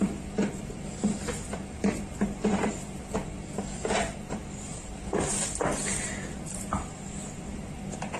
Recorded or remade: remade